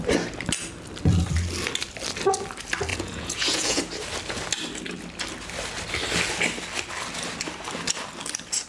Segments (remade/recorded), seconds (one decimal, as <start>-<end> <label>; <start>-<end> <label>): 0.0-2.9 recorded; 2.9-3.8 remade; 3.8-8.7 recorded